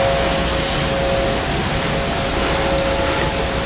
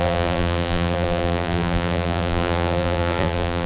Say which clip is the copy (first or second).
second